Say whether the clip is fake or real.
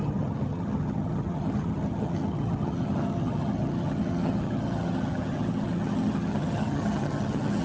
fake